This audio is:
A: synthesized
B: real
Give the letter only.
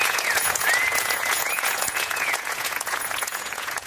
A